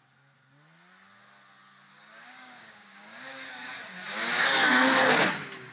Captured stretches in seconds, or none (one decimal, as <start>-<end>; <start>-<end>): 0.0-1.9; 5.3-5.7